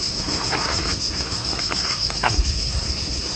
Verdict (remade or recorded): remade